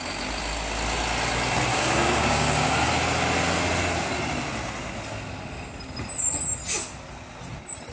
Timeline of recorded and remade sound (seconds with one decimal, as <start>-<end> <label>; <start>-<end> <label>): 0.0-1.7 recorded; 1.7-2.9 remade; 2.9-7.9 recorded